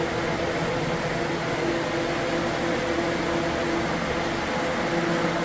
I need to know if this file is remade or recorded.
recorded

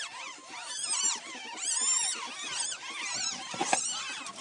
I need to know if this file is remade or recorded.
recorded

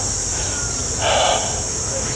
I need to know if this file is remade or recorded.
recorded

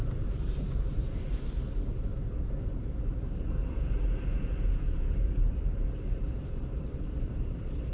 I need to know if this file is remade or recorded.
remade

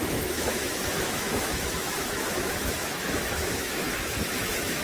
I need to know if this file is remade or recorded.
remade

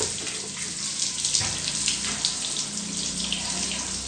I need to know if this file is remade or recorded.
recorded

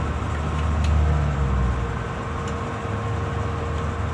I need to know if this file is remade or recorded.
recorded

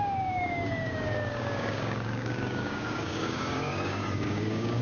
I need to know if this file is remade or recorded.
remade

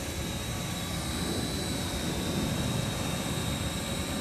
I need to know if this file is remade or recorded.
remade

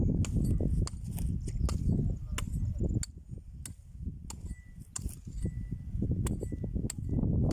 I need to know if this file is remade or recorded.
recorded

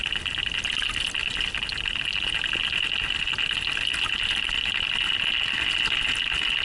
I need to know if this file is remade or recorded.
recorded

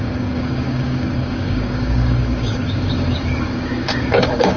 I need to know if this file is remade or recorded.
remade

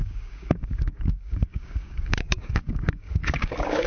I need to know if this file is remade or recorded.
remade